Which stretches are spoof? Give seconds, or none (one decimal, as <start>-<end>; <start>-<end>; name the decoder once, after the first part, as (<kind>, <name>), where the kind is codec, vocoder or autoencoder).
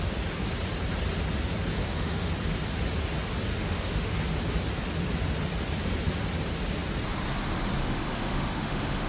1.8-2.3 (autoencoder, DAC-VAE); 3.5-4.2; 7.8-9.1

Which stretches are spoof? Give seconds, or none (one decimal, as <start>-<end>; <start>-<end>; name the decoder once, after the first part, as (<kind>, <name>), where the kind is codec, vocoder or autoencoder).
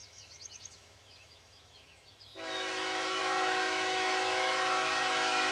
0.0-5.5 (autoencoder, DAC-VAE)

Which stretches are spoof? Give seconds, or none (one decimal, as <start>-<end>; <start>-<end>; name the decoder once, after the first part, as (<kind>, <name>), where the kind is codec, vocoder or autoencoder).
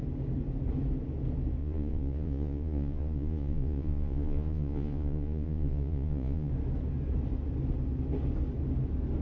1.6-6.5 (vocoder, Vocos)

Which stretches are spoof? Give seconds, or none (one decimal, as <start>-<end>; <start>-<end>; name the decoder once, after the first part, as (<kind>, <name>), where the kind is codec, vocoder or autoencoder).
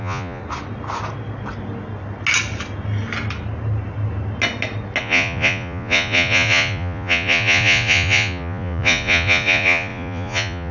0.0-0.4 (vocoder, Vocos); 5.0-10.7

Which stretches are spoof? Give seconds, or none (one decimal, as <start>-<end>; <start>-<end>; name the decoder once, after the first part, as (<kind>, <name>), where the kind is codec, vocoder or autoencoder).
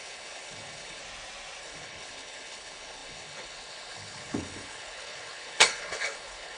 0.0-1.0 (codec, HILCodec); 1.6-6.6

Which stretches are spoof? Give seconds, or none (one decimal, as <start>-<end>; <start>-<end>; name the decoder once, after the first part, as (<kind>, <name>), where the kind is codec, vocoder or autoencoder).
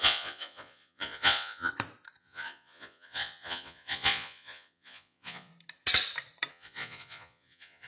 0.0-1.7 (vocoder, Vocos); 2.2-5.5; 6.5-7.9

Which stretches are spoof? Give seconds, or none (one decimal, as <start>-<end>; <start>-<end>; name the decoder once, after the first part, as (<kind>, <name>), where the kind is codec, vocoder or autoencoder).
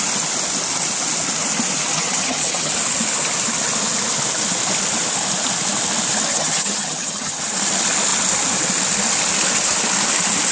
1.9-2.7 (vocoder, HiFi-GAN); 6.3-7.4